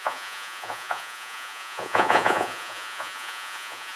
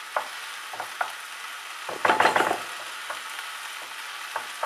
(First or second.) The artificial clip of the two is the first